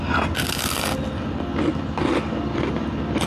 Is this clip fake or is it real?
real